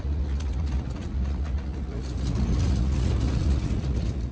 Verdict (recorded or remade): remade